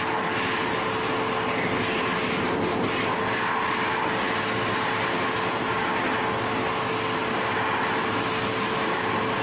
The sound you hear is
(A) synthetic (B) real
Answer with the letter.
B